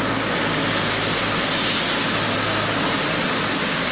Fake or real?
real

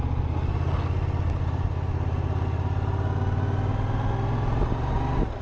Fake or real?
real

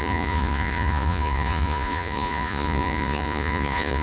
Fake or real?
fake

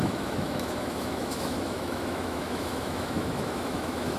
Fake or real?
fake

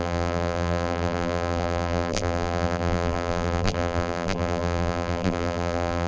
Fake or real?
fake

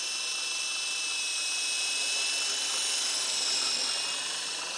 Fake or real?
real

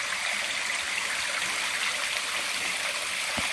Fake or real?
real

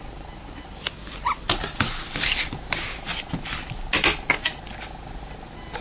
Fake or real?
real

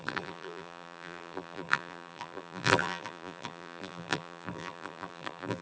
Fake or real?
fake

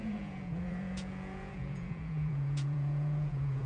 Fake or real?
fake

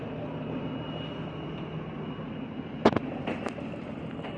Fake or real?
real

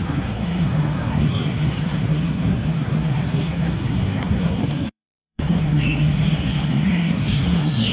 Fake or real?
fake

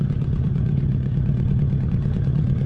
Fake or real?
fake